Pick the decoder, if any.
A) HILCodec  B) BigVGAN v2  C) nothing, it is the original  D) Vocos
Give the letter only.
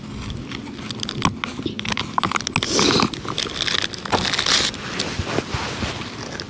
C